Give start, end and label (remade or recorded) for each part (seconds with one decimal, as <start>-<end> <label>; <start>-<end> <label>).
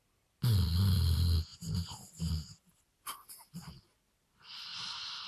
0.0-1.5 recorded; 1.5-2.3 remade; 2.3-5.3 recorded